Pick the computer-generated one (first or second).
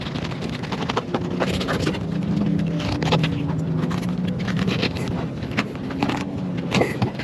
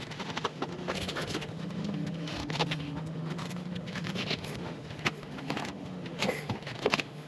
second